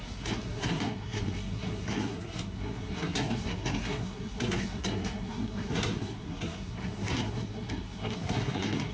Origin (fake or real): fake